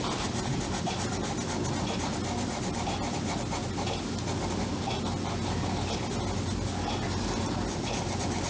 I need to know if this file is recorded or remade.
recorded